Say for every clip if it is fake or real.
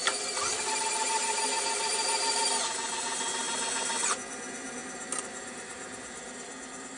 fake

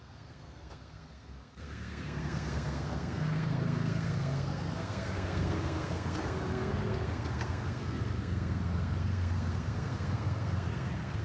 fake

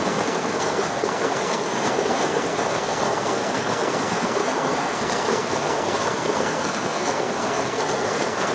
fake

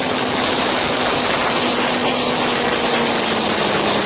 real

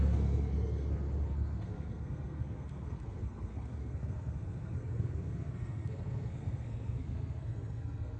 fake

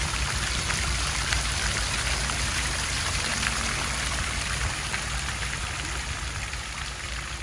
fake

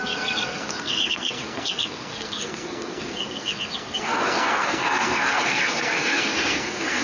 fake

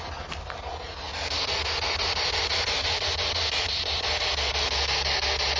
real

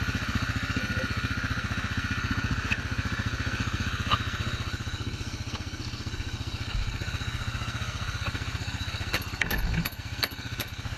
fake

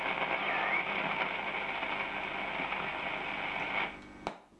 real